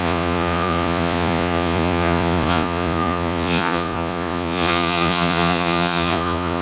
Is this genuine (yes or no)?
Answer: no